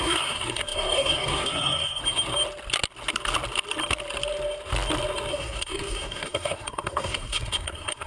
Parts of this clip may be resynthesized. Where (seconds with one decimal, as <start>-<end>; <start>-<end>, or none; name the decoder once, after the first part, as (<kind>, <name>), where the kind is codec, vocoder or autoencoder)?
0.0-2.0 (codec, SNAC); 5.3-8.1